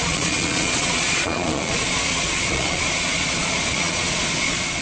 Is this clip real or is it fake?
fake